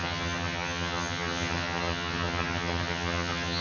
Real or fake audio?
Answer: fake